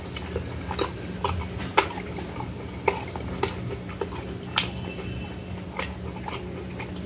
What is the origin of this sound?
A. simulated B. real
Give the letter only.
B